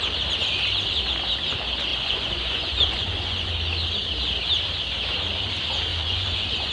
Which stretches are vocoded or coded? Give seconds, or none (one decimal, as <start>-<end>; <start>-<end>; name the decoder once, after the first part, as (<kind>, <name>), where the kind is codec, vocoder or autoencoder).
1.9-3.5 (vocoder, Vocos); 5.9-6.7